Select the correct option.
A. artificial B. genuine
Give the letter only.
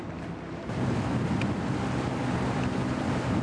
B